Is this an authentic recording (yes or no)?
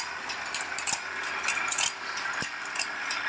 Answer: yes